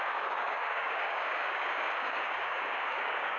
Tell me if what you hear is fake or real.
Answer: fake